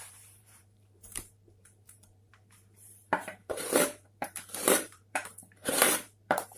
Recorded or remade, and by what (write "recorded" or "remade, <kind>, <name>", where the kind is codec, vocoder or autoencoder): remade, vocoder, BigVGAN v2